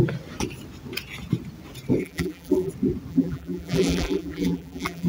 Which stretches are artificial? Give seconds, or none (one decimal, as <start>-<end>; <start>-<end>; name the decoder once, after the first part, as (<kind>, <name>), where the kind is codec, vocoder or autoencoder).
2.0-2.7 (vocoder, BigVGAN v2); 3.1-5.1